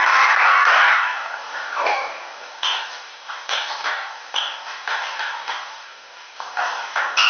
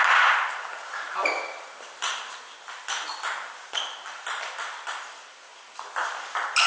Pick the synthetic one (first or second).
first